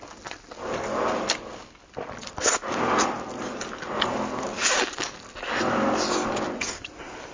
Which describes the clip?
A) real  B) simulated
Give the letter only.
A